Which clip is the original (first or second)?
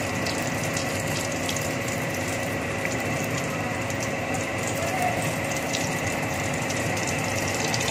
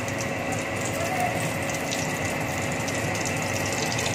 second